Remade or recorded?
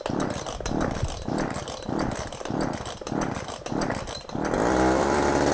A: remade